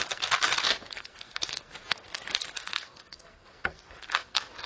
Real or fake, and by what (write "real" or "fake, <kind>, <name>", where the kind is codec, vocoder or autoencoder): fake, codec, SNAC